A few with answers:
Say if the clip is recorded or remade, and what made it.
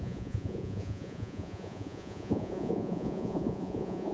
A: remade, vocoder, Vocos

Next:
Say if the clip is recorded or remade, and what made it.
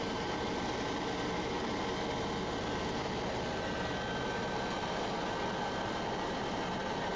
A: recorded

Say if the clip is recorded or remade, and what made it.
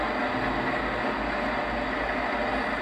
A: recorded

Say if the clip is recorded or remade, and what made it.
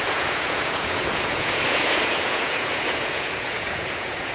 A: remade, vocoder, Vocos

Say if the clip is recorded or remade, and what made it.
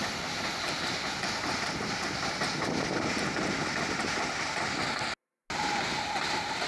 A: recorded